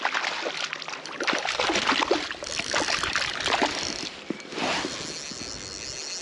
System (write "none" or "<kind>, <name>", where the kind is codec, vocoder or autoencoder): none